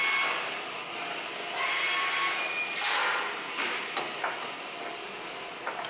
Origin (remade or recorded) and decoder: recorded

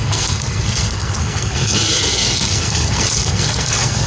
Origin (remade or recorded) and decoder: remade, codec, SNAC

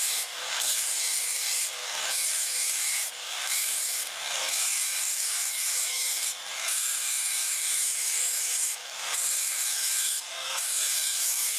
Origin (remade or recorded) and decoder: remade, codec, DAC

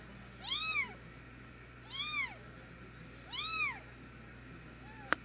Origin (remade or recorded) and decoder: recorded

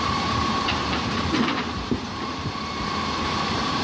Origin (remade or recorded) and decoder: remade, vocoder, BigVGAN v2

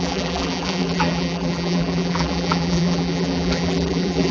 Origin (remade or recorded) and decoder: remade, vocoder, BigVGAN v2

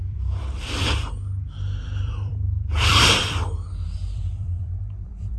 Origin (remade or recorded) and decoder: remade, vocoder, BigVGAN v2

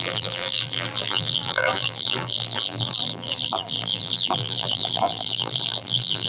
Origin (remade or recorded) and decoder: remade, vocoder, BigVGAN v2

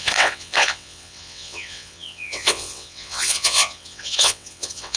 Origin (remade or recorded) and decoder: remade, vocoder, WaveNeXt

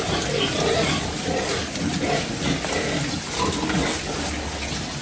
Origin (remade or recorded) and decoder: recorded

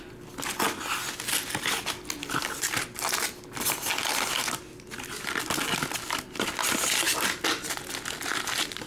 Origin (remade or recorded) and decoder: recorded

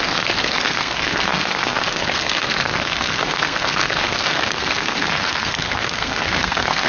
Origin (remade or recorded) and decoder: remade, codec, SNAC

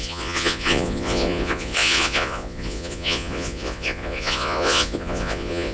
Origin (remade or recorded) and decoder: remade, vocoder, Vocos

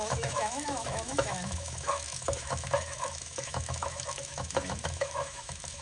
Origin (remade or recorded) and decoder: remade, autoencoder, DAC-VAE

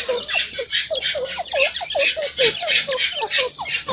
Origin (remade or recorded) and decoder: remade, vocoder, BigVGAN v2